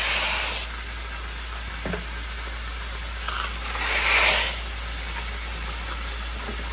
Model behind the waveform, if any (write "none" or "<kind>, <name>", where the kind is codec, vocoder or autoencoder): none